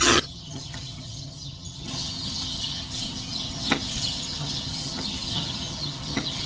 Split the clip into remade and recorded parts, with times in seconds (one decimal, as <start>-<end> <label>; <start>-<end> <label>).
0.0-6.5 remade